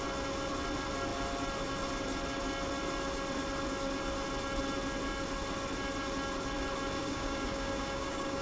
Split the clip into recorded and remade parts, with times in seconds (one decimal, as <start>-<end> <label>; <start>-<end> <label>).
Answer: 0.0-7.0 recorded; 7.0-8.4 remade